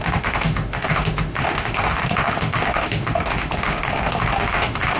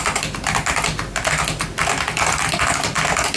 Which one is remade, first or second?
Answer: first